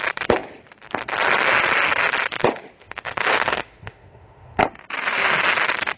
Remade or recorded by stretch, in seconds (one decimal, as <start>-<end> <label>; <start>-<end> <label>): 0.0-2.8 recorded; 2.8-4.6 remade; 4.6-6.0 recorded